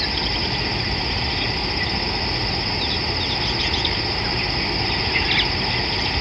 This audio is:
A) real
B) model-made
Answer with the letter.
A